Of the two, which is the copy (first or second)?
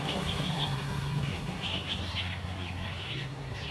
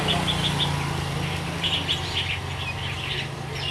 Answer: first